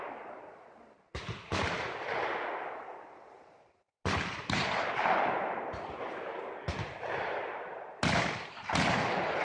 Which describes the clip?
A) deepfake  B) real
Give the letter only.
B